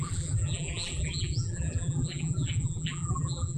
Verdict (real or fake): fake